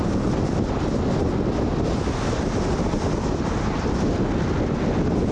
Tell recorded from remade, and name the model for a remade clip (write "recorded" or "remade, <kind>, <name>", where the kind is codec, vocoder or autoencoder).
recorded